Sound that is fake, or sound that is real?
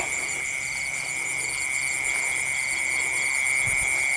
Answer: real